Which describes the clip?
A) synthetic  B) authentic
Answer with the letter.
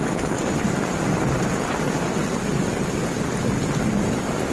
B